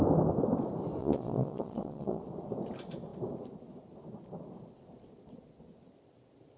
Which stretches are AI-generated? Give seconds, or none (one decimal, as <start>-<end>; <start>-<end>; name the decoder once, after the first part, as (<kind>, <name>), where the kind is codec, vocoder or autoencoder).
1.0-2.2 (vocoder, Vocos)